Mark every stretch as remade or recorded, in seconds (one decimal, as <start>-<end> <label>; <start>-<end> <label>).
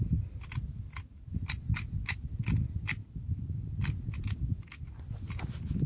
0.0-5.9 recorded